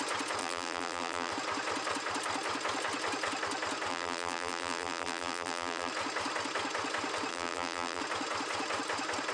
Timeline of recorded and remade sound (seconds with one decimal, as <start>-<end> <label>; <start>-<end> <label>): 0.0-0.4 recorded; 0.4-1.3 remade; 1.3-3.9 recorded; 3.9-5.9 remade; 5.9-7.3 recorded; 7.3-8.0 remade; 8.0-9.3 recorded